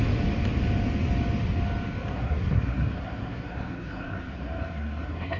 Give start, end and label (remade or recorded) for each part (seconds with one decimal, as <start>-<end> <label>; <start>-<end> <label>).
0.0-2.1 recorded; 2.1-5.4 remade